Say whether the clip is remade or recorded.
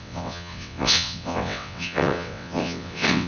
remade